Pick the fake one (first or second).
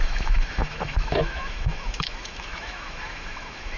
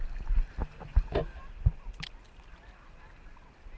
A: first